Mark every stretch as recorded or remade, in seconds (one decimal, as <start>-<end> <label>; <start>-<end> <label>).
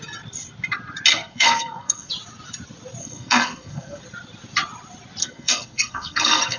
0.0-1.1 recorded; 1.1-2.1 remade; 2.1-3.0 recorded; 3.0-4.0 remade; 4.0-5.2 recorded; 5.2-6.6 remade